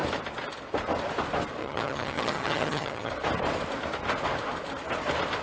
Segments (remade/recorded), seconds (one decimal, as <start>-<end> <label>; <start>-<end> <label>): 0.0-1.6 recorded; 1.6-3.1 remade; 3.1-5.4 recorded